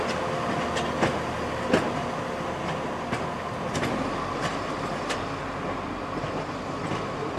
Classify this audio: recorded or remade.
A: recorded